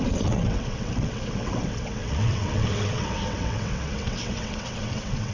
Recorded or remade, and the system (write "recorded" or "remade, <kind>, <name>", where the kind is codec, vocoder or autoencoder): remade, vocoder, WaveNeXt